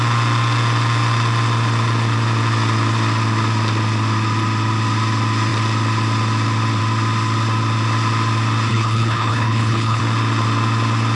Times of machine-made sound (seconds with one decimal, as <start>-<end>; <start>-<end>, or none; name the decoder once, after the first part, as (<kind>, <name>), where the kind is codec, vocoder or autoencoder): 8.7-10.0 (codec, HILCodec)